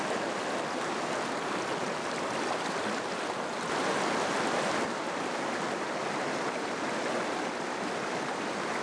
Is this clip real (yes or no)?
yes